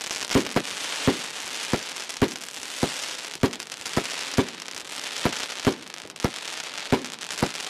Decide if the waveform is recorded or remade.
recorded